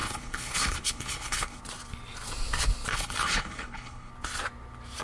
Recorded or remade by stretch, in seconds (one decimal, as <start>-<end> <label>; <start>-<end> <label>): 0.0-1.6 remade; 1.6-2.9 recorded; 2.9-4.1 remade; 4.1-5.0 recorded